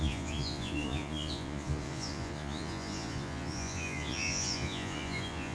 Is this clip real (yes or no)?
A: no